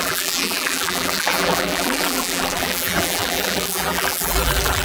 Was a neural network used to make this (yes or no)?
yes